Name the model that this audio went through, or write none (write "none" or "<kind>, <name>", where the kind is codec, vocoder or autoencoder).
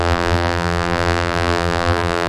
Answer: vocoder, BigVGAN v2